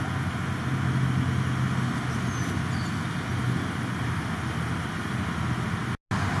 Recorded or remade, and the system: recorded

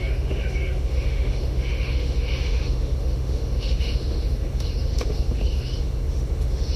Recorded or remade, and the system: remade, autoencoder, DAC-VAE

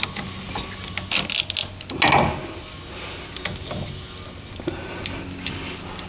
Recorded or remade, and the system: recorded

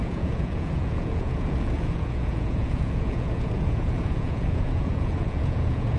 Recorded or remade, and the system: remade, vocoder, Vocos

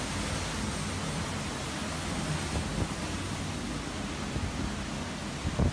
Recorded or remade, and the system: recorded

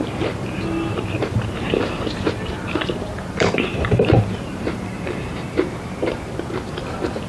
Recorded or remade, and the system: remade, vocoder, BigVGAN v2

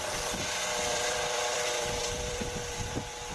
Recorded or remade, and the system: remade, vocoder, BigVGAN v2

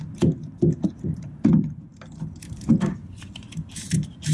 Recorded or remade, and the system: remade, vocoder, BigVGAN v2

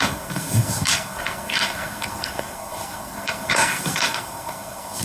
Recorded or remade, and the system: remade, codec, SNAC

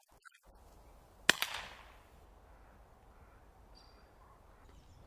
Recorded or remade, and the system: recorded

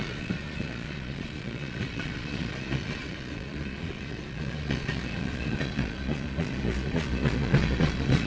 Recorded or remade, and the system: remade, vocoder, Vocos